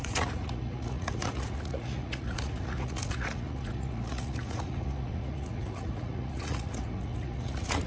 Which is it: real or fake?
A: fake